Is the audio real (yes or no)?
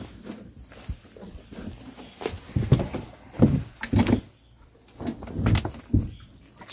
yes